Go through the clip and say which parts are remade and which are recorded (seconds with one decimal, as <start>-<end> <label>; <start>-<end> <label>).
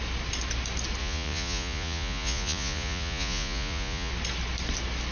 0.0-1.0 recorded; 1.0-4.1 remade; 4.1-5.1 recorded